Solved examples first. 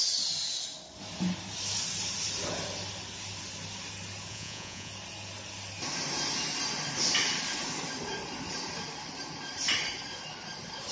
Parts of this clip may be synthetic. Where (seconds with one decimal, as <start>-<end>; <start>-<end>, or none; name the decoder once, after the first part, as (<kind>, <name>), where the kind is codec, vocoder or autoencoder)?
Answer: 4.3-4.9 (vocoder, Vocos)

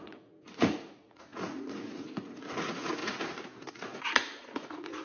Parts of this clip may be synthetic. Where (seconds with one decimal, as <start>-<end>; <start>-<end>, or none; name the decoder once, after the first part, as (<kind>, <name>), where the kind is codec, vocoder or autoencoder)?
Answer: 0.0-3.0 (vocoder, Vocos); 3.7-5.0

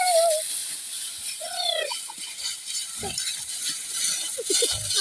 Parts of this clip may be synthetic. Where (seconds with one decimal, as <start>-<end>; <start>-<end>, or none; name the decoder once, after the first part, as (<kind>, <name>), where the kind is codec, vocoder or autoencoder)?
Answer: 0.6-2.6 (vocoder, Vocos); 3.5-4.5

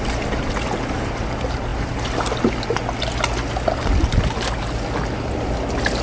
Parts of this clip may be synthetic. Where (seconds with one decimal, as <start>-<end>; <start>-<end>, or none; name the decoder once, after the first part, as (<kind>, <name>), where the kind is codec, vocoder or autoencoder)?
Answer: none

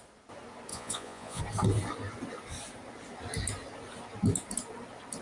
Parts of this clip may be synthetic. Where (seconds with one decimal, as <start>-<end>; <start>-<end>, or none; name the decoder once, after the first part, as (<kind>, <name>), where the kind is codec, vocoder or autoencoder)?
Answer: 0.7-1.4 (vocoder, Vocos)